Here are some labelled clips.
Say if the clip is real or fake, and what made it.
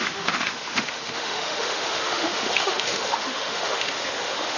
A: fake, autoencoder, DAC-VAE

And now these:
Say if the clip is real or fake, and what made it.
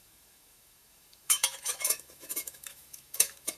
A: fake, autoencoder, DAC-VAE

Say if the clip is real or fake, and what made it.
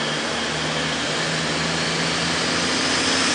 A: real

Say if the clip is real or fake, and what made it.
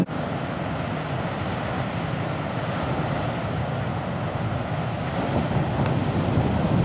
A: real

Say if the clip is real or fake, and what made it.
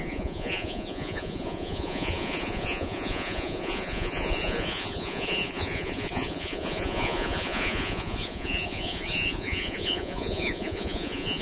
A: fake, vocoder, Vocos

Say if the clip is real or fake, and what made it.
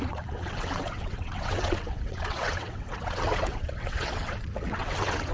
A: fake, vocoder, WaveNeXt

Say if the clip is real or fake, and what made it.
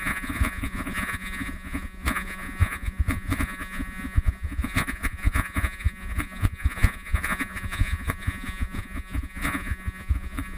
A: fake, vocoder, Vocos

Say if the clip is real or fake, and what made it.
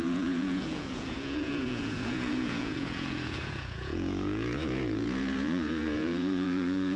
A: fake, vocoder, Vocos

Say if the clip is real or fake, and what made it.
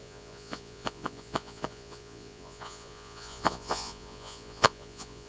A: fake, vocoder, Vocos